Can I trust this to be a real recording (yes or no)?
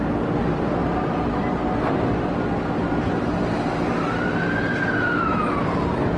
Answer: yes